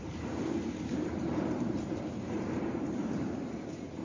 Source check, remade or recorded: remade